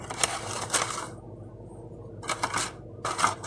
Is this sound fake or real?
real